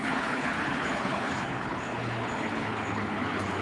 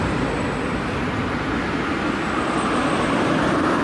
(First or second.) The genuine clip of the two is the second